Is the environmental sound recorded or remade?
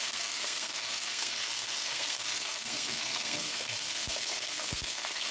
remade